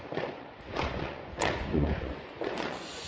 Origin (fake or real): fake